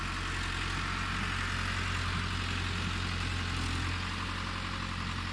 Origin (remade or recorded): recorded